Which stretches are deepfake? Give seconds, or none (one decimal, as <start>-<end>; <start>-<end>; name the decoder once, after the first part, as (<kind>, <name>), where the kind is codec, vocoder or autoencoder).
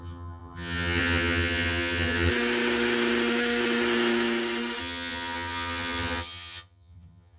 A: 0.0-2.3 (vocoder, HiFi-GAN); 4.8-7.4